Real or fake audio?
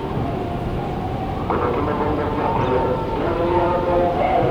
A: real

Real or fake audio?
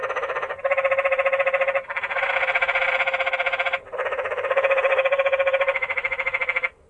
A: fake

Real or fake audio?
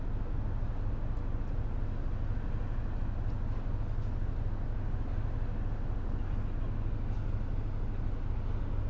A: real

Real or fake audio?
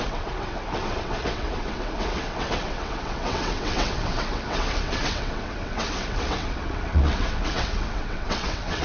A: fake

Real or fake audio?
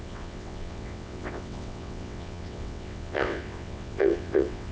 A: fake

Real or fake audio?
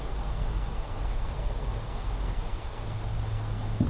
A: fake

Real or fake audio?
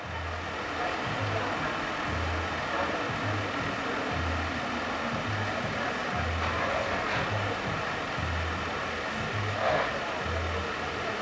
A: real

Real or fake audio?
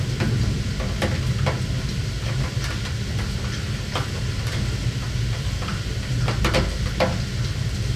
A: real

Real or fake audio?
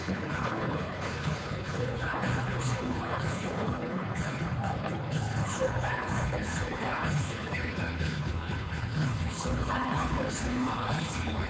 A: fake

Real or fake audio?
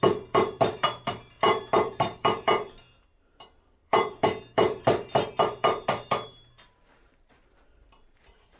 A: fake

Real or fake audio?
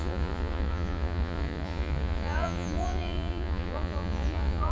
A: fake